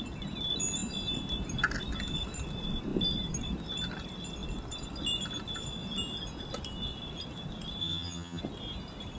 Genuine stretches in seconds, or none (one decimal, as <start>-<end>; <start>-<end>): 0.0-7.8; 8.4-9.2